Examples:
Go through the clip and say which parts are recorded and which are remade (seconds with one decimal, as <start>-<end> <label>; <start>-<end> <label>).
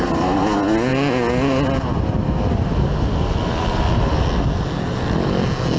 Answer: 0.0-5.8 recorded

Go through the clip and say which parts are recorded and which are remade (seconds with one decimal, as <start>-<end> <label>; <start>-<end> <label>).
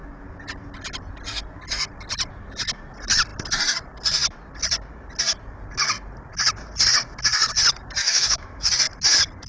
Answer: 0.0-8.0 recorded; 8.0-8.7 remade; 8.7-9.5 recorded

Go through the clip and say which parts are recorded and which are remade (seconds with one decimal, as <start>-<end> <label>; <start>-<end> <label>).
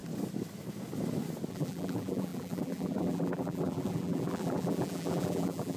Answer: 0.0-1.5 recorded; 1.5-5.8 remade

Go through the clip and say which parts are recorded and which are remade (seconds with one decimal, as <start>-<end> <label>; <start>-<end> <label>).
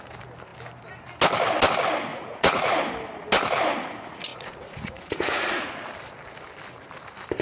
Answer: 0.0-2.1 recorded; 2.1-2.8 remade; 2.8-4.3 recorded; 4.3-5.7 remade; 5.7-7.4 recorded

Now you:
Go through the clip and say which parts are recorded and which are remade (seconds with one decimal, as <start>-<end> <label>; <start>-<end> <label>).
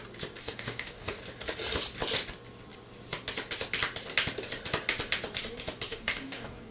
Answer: 0.0-0.4 recorded; 0.4-1.2 remade; 1.2-5.9 recorded; 5.9-6.7 remade